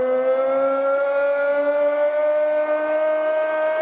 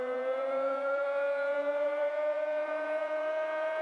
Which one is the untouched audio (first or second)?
first